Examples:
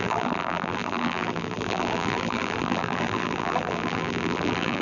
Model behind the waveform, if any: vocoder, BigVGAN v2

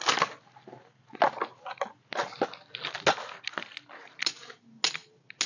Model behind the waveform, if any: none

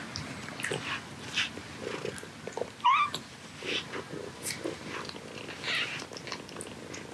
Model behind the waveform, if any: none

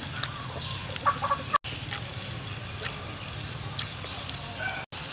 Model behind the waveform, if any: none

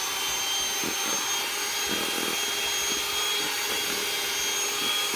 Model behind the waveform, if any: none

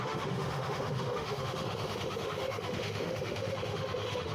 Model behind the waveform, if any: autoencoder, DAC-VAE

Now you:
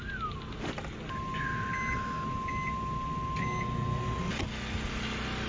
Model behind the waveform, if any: none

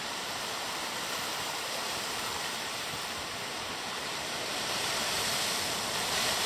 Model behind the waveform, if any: vocoder, BigVGAN v2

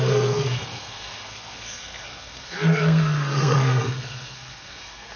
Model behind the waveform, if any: codec, SNAC